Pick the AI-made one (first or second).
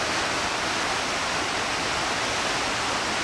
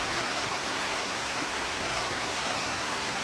second